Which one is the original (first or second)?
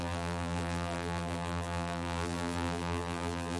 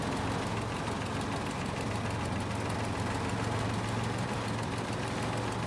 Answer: second